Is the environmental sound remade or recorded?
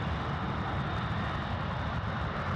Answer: recorded